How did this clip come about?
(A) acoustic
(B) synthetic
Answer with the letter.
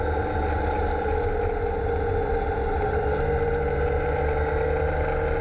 A